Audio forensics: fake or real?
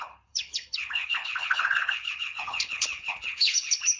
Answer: fake